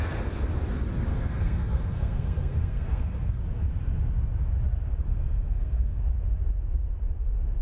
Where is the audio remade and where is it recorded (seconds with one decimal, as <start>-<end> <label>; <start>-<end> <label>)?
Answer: 0.0-1.1 recorded; 1.1-3.4 remade; 3.4-5.0 recorded; 5.0-6.0 remade; 6.0-7.6 recorded